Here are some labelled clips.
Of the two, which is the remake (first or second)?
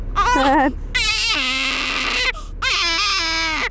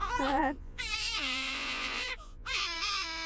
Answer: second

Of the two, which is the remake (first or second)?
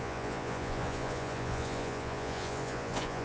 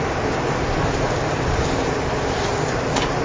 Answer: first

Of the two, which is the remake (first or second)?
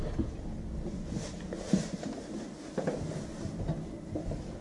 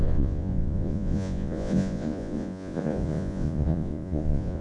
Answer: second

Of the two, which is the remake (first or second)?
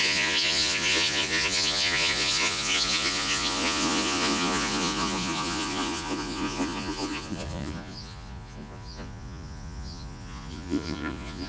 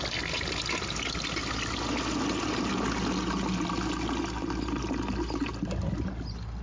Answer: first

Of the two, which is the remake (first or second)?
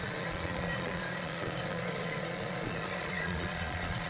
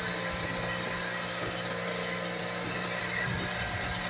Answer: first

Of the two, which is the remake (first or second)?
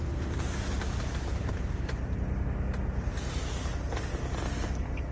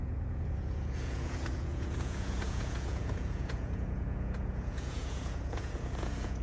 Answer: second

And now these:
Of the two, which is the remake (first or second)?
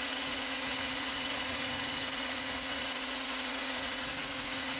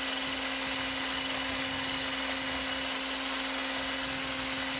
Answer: first